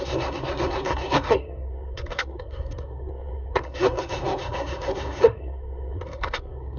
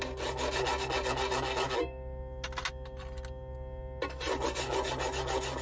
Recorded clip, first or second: second